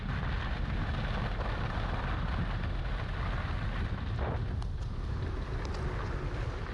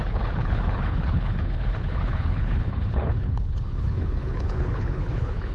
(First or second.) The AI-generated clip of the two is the second